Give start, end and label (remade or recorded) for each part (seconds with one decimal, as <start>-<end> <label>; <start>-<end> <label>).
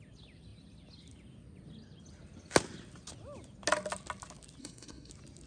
0.0-4.6 recorded; 4.6-5.1 remade; 5.1-5.5 recorded